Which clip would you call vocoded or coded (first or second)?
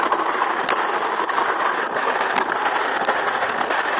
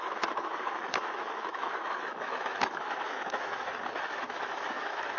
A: second